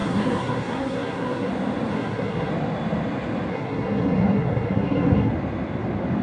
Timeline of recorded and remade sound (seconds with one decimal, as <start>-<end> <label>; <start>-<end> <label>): 0.0-1.5 remade; 1.5-1.9 recorded; 1.9-2.5 remade; 2.5-3.5 recorded; 3.5-5.3 remade; 5.3-6.2 recorded